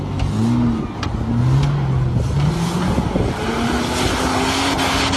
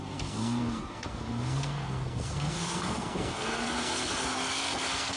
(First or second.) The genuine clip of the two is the first